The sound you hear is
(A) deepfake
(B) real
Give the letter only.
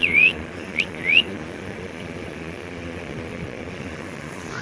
A